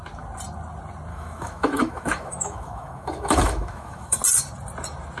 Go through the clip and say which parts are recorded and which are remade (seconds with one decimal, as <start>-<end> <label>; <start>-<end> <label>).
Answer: 0.0-1.1 recorded; 1.1-4.2 remade; 4.2-5.2 recorded